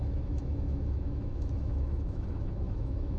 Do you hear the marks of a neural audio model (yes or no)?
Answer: yes